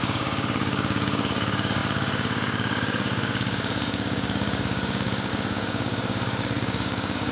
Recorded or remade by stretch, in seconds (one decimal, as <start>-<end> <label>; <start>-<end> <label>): 0.0-7.3 remade